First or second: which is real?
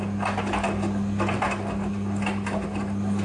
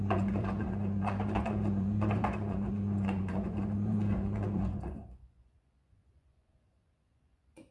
first